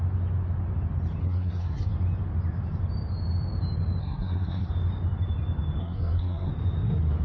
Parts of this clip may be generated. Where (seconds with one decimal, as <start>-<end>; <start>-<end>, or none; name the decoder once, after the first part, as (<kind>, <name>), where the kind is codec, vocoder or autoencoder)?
1.2-1.9 (codec, SNAC); 4.0-4.7; 5.8-6.5